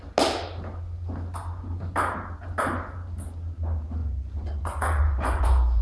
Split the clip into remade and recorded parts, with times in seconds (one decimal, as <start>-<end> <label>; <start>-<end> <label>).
0.0-4.0 recorded; 4.0-5.8 remade

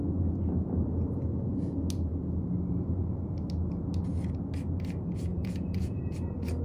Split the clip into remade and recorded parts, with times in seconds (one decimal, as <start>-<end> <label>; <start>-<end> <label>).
0.0-5.3 recorded; 5.3-6.0 remade; 6.0-6.6 recorded

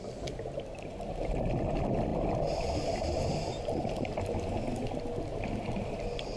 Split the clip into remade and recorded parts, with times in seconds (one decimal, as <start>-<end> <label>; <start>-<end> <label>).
0.0-6.4 recorded